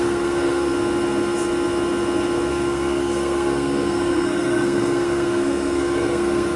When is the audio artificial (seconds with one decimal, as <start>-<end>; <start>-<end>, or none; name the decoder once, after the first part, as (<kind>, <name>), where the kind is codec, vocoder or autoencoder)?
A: 0.0-0.7 (codec, SNAC); 2.5-6.6